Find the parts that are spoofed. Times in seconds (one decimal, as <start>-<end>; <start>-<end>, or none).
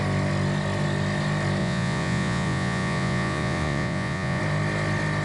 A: 1.6-4.4